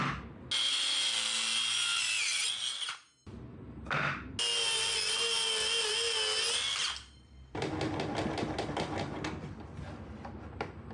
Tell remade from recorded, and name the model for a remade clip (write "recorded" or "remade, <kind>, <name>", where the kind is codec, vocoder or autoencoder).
recorded